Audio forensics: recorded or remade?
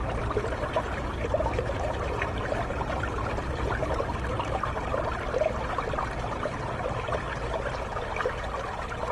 recorded